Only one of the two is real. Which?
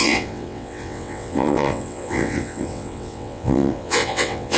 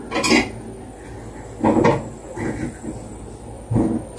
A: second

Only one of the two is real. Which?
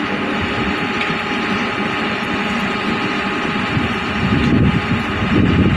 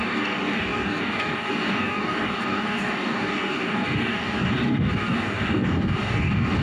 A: first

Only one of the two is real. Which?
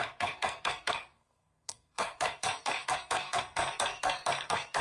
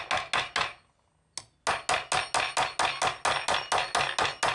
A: second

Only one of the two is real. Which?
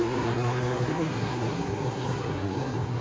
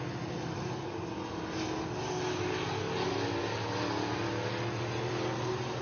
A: second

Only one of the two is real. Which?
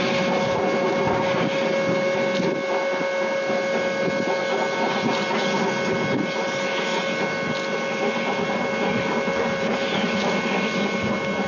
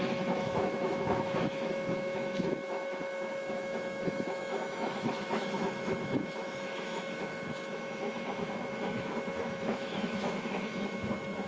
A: first